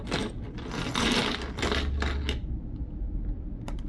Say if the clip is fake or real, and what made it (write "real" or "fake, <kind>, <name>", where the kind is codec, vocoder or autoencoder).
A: real